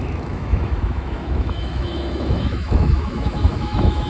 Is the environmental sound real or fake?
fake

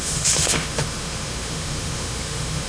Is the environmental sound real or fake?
fake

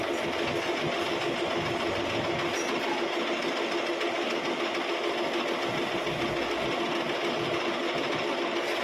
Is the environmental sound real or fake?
real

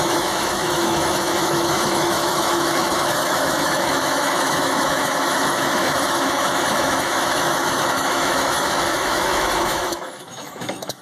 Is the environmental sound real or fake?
fake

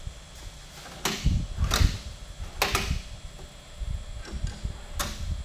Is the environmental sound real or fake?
real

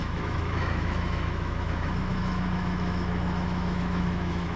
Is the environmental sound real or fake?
fake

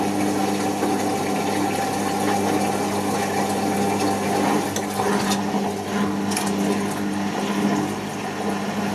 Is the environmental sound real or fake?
real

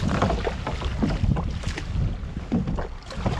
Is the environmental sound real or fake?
real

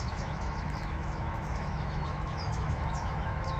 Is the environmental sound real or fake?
fake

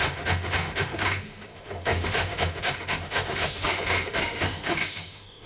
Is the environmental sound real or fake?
fake